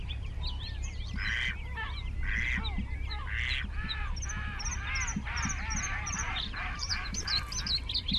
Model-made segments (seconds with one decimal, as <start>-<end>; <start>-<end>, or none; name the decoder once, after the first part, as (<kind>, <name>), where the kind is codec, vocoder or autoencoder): 5.1-7.4 (vocoder, BigVGAN v2)